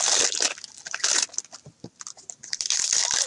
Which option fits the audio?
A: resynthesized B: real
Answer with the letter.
A